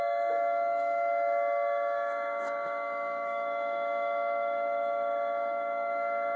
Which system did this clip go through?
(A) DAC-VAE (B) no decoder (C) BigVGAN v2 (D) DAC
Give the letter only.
A